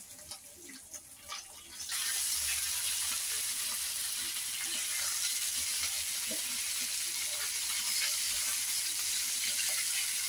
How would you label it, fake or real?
real